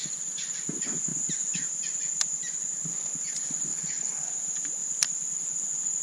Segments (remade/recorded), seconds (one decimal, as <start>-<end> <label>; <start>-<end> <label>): 0.0-3.7 recorded; 3.7-4.3 remade; 4.3-6.0 recorded